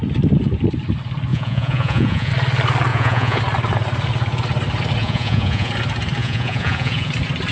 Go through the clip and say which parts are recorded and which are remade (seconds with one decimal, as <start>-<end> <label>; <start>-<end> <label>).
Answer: 0.0-1.3 recorded; 1.3-2.3 remade; 2.3-2.9 recorded; 2.9-3.4 remade; 3.4-5.0 recorded; 5.0-5.7 remade; 5.7-6.2 recorded; 6.2-7.1 remade; 7.1-7.5 recorded